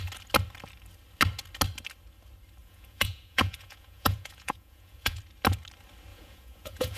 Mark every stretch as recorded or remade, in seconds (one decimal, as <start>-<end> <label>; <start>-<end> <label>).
0.0-2.6 recorded; 2.6-5.2 remade; 5.2-6.1 recorded; 6.1-7.0 remade